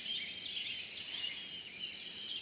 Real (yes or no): yes